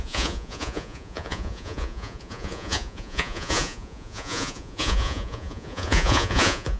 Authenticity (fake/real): fake